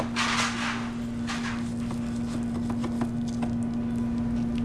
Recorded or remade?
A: recorded